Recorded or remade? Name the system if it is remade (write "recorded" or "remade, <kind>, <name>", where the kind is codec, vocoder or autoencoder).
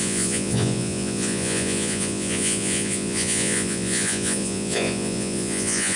remade, vocoder, Vocos